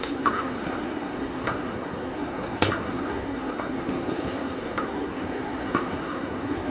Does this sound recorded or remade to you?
remade